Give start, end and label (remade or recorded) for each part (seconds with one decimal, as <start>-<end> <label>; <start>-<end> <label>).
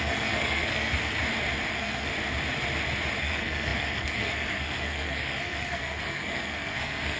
0.0-1.2 remade; 1.2-1.7 recorded; 1.7-2.1 remade; 2.1-3.2 recorded; 3.2-7.2 remade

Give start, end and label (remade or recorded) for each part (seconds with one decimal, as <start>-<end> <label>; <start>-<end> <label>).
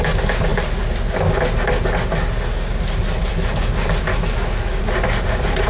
0.0-4.1 recorded; 4.1-4.8 remade; 4.8-5.7 recorded